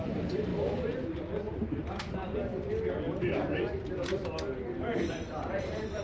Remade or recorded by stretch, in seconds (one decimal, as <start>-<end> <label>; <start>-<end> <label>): 0.0-0.5 remade; 0.5-2.1 recorded; 2.1-4.2 remade; 4.2-5.1 recorded; 5.1-6.0 remade